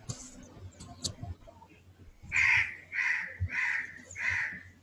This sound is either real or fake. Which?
real